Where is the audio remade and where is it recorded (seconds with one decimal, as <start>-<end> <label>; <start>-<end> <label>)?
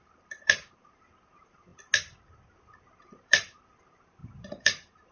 0.0-1.7 remade; 1.7-2.5 recorded; 2.5-5.1 remade